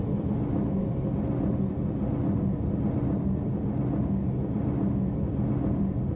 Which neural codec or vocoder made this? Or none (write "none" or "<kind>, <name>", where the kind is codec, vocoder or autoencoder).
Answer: none